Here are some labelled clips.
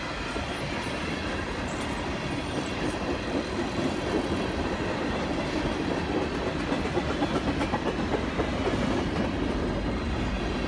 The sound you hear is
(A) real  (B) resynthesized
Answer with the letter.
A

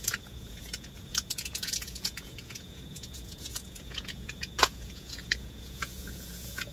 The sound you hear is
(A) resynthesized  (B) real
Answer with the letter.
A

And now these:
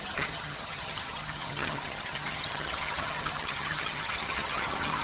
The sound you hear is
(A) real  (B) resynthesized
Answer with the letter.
B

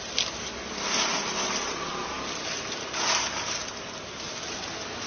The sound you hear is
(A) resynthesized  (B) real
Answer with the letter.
B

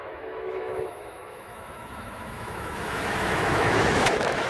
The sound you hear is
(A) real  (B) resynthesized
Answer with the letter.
B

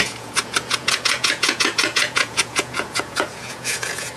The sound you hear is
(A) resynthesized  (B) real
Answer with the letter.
A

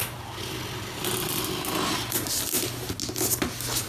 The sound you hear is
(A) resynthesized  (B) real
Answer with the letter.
B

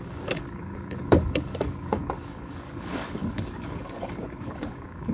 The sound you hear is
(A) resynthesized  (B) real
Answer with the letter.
A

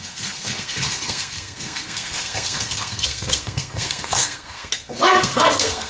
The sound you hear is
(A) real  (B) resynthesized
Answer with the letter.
B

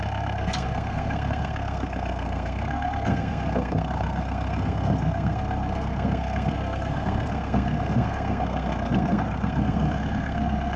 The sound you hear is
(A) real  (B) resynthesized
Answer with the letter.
B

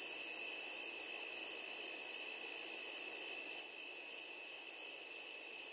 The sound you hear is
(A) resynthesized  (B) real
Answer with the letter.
B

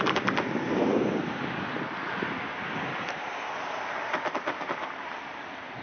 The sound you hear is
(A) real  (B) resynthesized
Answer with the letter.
A